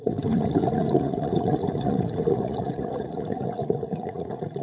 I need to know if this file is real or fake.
fake